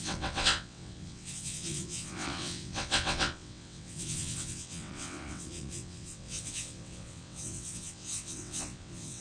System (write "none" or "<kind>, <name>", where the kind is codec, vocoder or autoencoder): vocoder, WaveNeXt